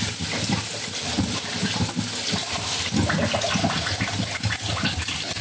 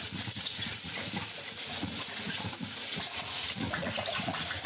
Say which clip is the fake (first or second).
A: second